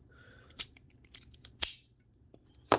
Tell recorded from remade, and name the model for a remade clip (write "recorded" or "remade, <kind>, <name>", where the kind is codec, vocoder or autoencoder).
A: remade, vocoder, BigVGAN v2